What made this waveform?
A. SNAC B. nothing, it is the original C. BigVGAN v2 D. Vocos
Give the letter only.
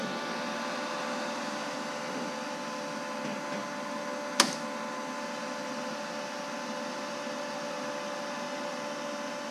B